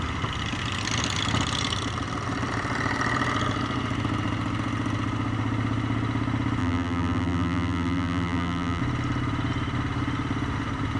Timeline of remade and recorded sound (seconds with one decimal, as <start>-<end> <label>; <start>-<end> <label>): 0.0-6.6 recorded; 6.6-8.8 remade; 8.8-11.0 recorded